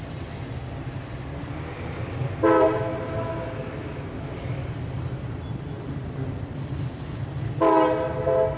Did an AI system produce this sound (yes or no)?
no